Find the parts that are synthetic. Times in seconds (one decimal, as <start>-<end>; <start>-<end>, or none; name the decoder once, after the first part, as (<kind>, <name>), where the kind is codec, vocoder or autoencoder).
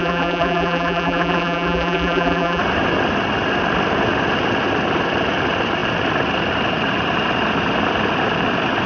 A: 0.0-2.6 (vocoder, BigVGAN v2)